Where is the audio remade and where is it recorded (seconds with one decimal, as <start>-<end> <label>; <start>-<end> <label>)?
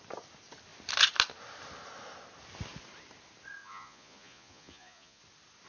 0.0-3.6 recorded; 3.6-5.2 remade; 5.2-5.7 recorded